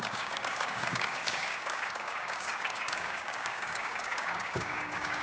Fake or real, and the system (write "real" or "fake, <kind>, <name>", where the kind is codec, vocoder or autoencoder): fake, codec, DAC